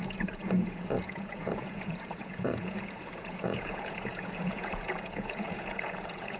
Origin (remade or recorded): remade